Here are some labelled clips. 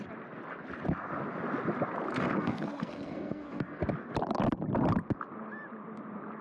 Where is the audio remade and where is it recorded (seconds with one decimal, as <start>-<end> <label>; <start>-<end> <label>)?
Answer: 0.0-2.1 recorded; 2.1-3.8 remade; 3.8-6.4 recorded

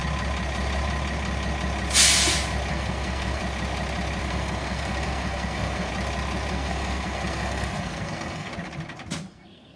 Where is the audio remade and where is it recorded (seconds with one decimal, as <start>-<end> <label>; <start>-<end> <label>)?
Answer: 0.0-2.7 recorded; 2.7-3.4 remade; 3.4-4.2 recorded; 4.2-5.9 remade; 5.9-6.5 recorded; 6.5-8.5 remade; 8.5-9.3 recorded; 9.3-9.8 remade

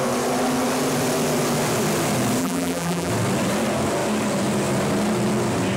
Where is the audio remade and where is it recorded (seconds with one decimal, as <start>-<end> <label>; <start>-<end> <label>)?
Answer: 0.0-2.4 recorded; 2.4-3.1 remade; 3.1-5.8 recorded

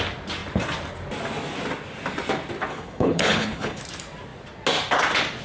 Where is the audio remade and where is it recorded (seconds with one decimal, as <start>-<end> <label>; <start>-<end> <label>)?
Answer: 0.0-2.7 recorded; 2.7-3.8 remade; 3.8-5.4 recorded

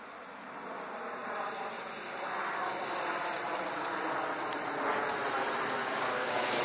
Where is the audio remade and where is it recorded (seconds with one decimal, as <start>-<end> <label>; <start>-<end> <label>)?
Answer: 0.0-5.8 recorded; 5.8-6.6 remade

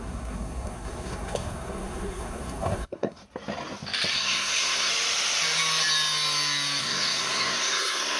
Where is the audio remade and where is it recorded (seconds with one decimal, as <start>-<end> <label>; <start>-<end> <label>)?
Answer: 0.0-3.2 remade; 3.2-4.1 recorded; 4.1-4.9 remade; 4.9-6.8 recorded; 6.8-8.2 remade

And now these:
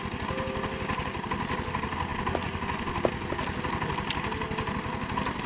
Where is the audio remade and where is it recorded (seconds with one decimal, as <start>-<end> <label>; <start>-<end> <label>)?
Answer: 0.0-5.5 recorded